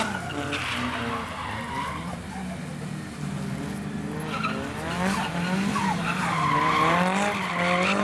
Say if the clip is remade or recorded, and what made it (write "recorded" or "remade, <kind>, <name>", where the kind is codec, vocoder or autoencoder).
recorded